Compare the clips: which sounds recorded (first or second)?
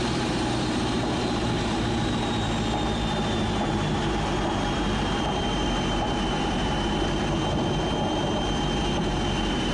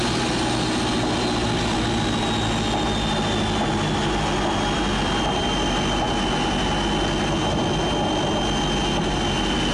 second